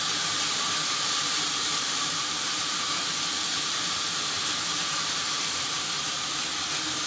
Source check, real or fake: fake